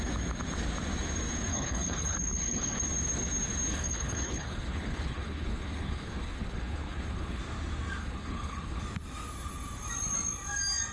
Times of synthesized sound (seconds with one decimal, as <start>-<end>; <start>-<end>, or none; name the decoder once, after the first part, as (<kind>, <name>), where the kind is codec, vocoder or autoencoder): 1.5-2.8 (codec, HILCodec); 3.7-7.4; 8.0-8.8